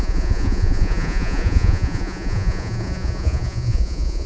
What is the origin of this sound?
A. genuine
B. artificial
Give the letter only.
B